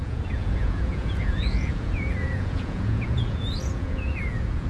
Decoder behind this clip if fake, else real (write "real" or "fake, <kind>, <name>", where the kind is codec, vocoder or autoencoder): fake, vocoder, Vocos